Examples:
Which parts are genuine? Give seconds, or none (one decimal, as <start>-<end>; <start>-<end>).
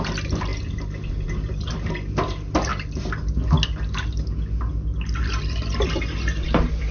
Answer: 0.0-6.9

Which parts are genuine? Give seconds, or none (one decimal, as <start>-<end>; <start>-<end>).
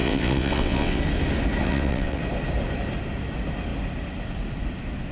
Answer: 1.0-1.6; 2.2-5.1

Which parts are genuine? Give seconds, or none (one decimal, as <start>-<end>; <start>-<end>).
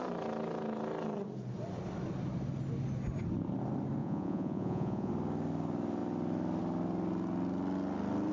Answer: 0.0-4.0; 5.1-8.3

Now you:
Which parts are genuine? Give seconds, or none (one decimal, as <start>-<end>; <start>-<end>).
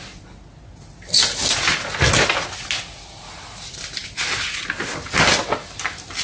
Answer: 0.0-6.2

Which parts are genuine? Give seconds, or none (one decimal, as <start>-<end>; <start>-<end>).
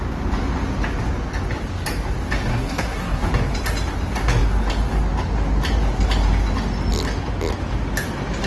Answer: 0.0-2.5; 3.3-8.5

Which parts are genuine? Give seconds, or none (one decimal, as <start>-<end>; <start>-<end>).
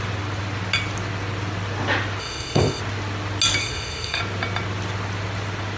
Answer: 0.0-2.2; 2.8-3.6; 4.2-5.8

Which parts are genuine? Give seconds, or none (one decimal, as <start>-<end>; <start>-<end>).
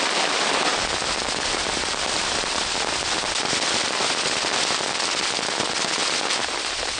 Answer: 0.0-7.0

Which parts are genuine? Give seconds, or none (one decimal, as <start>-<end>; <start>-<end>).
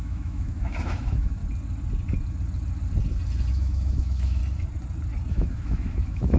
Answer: 1.4-3.5; 4.4-5.3